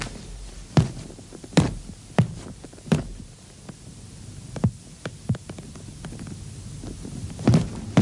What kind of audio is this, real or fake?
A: real